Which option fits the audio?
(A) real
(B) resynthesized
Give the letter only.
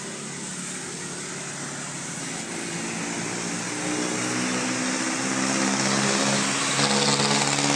A